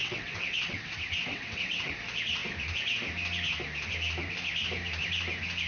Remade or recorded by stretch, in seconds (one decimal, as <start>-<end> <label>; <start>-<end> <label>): 0.0-0.9 remade; 0.9-1.3 recorded; 1.3-1.9 remade; 1.9-5.7 recorded